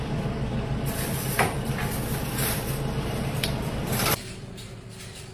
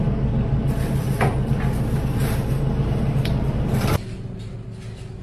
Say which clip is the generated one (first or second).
first